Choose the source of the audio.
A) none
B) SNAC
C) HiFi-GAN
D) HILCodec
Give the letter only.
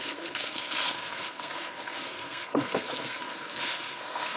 B